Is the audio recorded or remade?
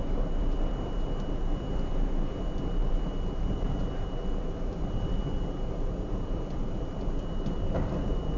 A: remade